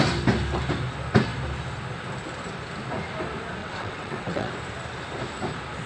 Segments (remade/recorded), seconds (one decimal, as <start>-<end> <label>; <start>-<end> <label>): 0.0-3.6 recorded; 3.6-4.5 remade; 4.5-5.9 recorded